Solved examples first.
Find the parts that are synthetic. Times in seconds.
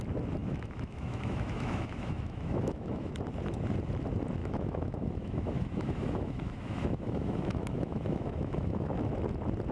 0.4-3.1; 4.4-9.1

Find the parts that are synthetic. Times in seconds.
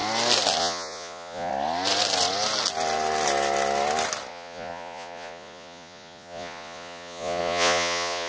0.6-1.5; 4.3-8.3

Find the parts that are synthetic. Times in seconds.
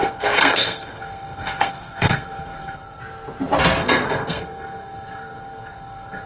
0.0-3.0; 3.8-6.3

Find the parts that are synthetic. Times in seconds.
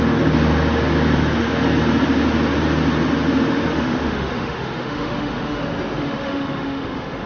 3.7-5.6; 6.0-7.3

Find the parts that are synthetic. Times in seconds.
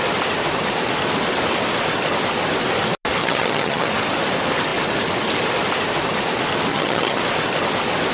3.2-3.9; 6.7-7.2